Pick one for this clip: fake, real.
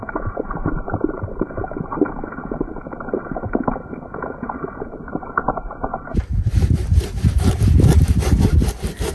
fake